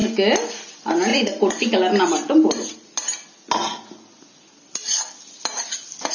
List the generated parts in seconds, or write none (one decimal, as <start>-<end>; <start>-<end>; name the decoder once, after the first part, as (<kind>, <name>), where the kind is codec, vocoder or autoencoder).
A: none